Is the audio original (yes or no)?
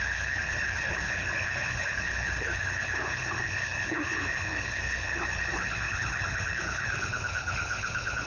no